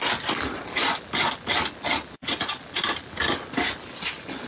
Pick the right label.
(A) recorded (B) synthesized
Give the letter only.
A